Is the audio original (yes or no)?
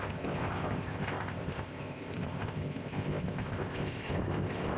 no